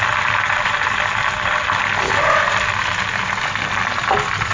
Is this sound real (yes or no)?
yes